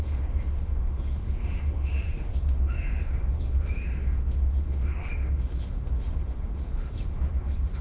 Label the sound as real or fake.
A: fake